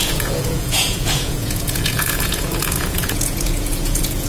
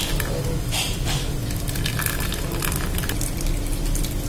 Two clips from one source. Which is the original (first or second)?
second